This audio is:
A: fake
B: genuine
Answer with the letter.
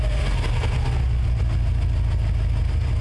B